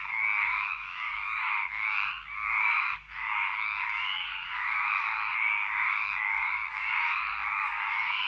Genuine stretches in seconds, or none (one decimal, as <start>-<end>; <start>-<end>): none